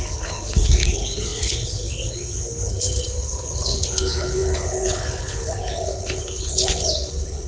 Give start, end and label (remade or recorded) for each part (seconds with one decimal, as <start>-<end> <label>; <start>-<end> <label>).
0.0-7.5 remade